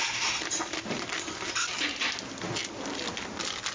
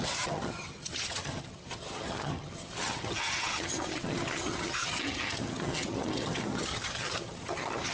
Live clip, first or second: first